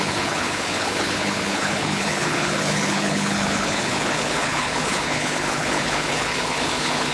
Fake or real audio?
fake